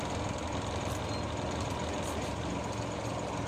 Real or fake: real